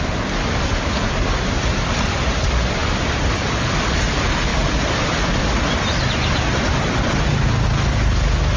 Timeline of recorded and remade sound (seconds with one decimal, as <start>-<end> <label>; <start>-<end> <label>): 0.0-4.5 remade; 4.5-8.6 recorded